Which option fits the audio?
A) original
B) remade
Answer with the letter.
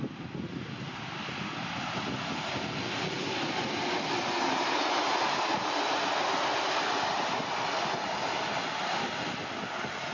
A